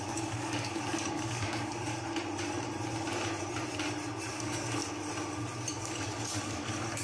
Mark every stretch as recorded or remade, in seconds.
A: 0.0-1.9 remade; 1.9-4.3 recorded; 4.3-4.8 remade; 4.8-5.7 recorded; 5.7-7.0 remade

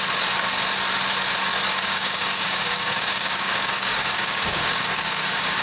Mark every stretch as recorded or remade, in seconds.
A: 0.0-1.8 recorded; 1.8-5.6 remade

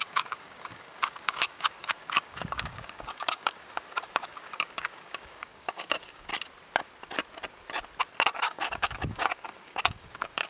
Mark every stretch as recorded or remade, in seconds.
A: 0.0-6.3 remade; 6.3-8.4 recorded; 8.4-10.5 remade

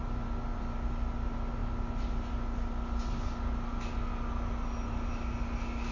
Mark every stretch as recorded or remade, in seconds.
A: 0.0-5.9 recorded

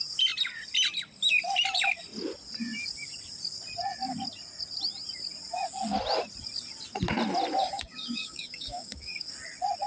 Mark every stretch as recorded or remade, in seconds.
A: 0.0-7.6 recorded; 7.6-9.3 remade; 9.3-9.9 recorded

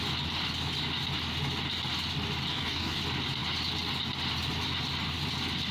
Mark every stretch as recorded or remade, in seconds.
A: 0.0-2.5 recorded; 2.5-3.0 remade; 3.0-5.7 recorded

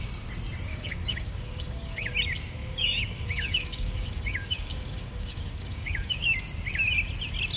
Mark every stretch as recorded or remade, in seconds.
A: 0.0-0.7 recorded; 0.7-2.1 remade; 2.1-2.6 recorded; 2.6-6.4 remade; 6.4-7.6 recorded

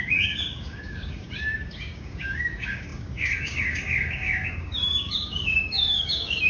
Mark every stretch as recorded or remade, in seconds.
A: 0.0-6.5 remade